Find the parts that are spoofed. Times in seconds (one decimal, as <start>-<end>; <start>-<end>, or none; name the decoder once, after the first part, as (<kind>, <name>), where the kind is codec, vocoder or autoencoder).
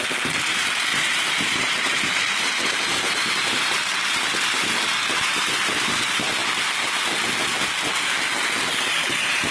0.0-6.4 (vocoder, BigVGAN v2); 8.9-9.5